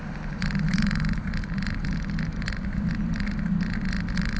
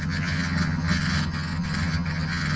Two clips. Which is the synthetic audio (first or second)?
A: second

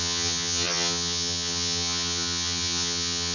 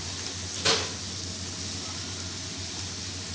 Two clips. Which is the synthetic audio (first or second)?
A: first